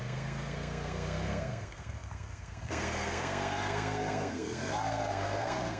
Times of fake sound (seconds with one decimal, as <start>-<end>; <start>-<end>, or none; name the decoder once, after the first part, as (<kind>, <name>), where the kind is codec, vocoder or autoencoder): 0.0-5.8 (codec, SNAC)